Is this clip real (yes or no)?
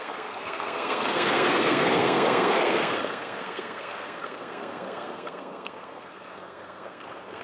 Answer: no